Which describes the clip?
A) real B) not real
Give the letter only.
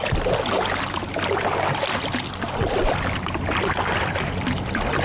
A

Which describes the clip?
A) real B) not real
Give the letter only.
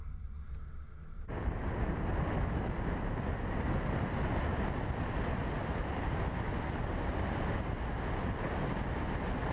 A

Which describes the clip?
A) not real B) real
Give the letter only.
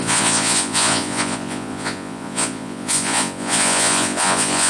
A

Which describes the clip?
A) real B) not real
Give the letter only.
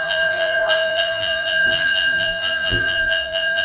B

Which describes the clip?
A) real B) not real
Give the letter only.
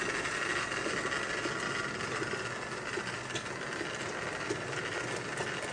A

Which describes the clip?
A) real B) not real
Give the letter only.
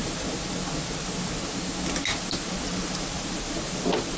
A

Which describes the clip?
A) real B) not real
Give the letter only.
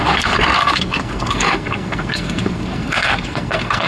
B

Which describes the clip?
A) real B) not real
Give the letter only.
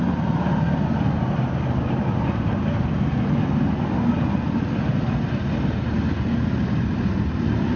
A